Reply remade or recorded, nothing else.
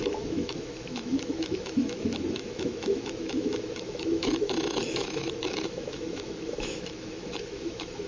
remade